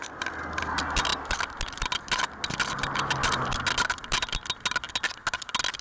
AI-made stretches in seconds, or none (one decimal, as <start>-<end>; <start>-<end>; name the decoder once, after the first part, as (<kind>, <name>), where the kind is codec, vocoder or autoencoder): none